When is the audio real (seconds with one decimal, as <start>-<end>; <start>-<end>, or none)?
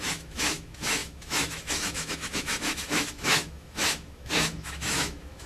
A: none